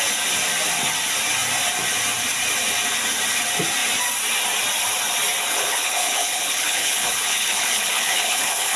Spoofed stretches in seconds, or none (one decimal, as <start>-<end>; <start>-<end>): 5.5-8.8

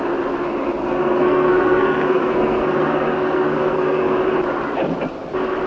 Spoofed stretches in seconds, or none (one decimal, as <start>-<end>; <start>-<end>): 0.8-4.2

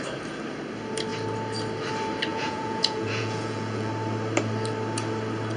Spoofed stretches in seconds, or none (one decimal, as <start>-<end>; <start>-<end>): 2.3-3.9